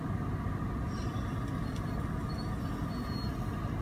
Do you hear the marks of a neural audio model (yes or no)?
no